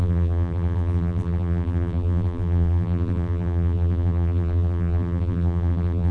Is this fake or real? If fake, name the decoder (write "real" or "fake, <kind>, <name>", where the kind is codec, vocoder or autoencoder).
fake, vocoder, BigVGAN v2